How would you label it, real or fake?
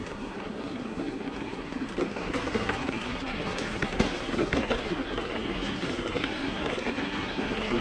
fake